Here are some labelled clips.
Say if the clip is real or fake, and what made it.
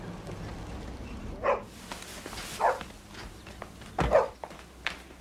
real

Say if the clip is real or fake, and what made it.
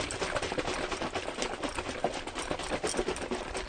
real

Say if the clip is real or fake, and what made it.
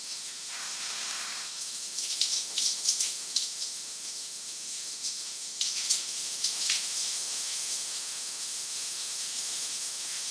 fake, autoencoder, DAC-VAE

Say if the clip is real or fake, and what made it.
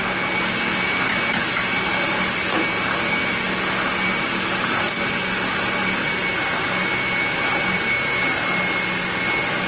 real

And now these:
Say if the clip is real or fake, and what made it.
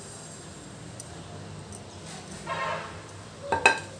real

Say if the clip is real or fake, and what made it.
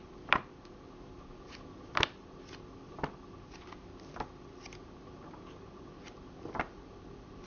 real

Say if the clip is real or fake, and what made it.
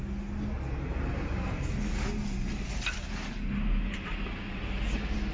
real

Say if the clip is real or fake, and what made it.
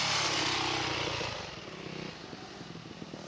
real